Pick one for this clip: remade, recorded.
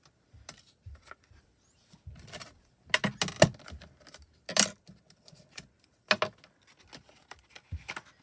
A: recorded